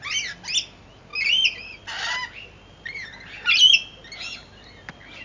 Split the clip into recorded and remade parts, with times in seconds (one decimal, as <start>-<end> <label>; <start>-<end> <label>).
0.0-5.2 recorded